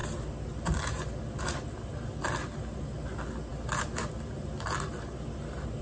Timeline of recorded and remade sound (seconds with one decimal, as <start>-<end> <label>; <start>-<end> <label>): 0.0-5.8 recorded